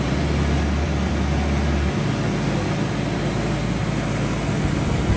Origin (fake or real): real